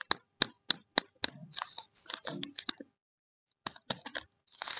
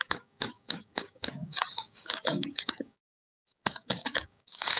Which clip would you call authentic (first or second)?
first